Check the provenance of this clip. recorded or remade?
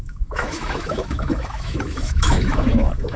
remade